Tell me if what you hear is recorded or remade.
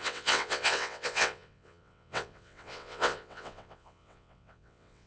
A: remade